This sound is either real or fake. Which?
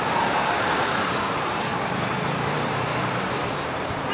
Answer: fake